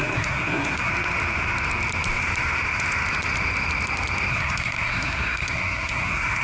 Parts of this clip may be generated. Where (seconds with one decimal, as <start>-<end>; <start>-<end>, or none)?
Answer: 0.0-0.9; 4.3-6.4